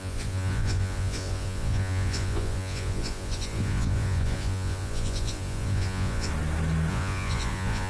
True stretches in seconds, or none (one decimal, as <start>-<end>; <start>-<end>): 6.3-6.9

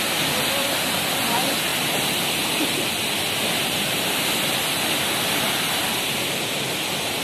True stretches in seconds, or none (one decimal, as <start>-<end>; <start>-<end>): 0.0-7.2

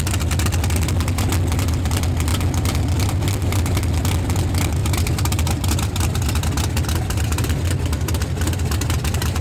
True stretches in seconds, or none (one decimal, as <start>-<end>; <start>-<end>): 0.0-2.3; 3.9-4.8; 7.6-9.4